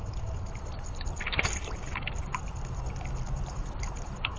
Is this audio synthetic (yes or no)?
no